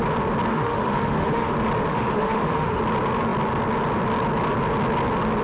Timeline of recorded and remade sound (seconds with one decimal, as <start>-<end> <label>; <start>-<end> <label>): 0.0-0.5 recorded; 0.5-1.5 remade; 1.5-1.9 recorded; 1.9-2.8 remade; 2.8-5.4 recorded